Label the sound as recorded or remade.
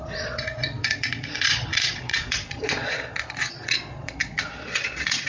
remade